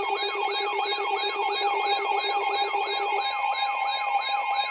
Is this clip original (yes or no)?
yes